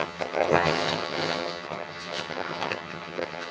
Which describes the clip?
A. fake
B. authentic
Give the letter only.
A